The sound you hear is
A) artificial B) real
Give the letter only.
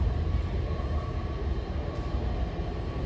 B